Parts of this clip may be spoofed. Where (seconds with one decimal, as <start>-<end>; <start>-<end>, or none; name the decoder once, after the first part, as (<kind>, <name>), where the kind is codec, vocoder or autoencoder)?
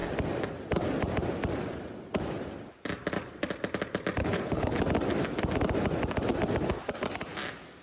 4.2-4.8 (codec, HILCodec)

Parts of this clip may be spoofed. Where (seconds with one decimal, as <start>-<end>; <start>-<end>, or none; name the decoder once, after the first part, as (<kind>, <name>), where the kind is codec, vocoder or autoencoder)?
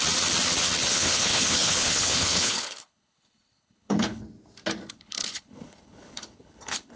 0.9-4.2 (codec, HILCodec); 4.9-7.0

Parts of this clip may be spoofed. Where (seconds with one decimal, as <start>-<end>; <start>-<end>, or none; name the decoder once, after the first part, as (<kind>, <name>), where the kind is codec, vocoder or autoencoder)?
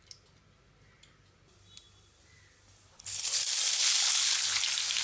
2.9-3.4 (codec, HILCodec); 3.8-4.6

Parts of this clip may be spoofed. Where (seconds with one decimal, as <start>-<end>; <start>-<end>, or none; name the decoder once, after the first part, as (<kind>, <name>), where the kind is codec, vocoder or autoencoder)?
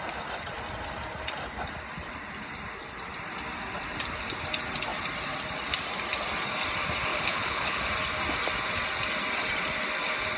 7.1-7.8 (codec, HILCodec)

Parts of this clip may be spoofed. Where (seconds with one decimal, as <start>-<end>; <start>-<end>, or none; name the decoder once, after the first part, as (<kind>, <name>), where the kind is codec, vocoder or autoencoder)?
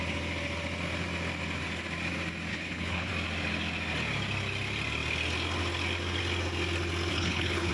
2.5-3.1 (codec, HILCodec); 7.1-7.7